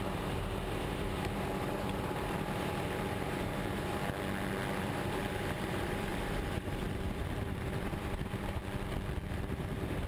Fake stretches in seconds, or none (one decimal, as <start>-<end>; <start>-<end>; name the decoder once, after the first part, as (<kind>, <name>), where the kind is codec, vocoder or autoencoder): 0.0-4.0 (vocoder, BigVGAN v2); 4.8-8.6; 9.3-10.1